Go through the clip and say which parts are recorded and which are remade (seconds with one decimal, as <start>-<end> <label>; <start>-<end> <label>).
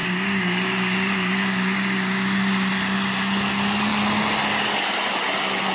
0.0-2.7 remade; 2.7-5.7 recorded